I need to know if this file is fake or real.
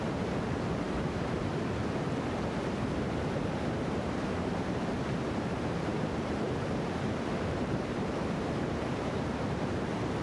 fake